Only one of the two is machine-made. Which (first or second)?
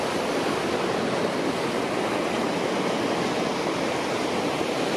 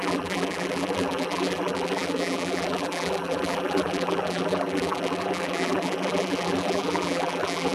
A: second